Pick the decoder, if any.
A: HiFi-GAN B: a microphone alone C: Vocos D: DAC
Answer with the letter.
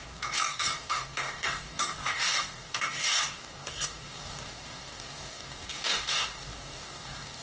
D